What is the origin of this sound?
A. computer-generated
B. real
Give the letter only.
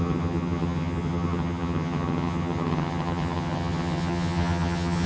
A